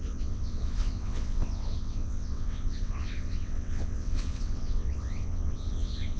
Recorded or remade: remade